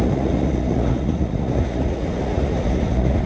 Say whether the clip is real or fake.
fake